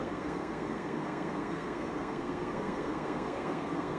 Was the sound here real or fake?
fake